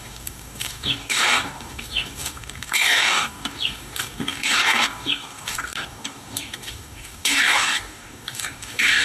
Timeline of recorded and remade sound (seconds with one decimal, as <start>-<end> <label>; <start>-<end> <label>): 0.0-9.0 remade